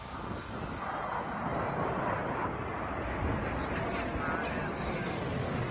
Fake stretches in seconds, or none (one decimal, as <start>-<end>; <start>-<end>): none